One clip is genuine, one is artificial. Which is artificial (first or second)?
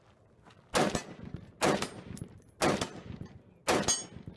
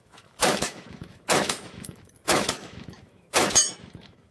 second